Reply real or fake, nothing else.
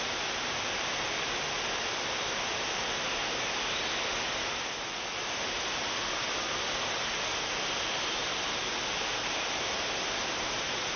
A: real